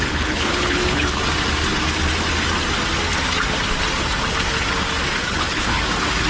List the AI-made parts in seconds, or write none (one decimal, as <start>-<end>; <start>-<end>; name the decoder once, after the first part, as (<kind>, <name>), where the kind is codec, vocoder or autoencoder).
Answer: 0.0-1.2 (codec, HILCodec); 5.2-5.8